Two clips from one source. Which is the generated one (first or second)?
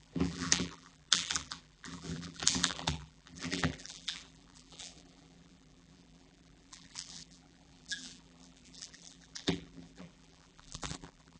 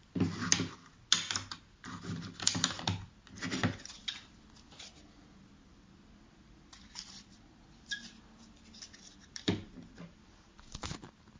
first